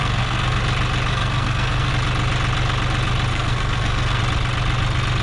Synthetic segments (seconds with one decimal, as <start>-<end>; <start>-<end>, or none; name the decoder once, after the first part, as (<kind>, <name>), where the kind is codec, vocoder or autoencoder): 0.0-0.6 (codec, SNAC); 1.1-1.9; 3.3-4.2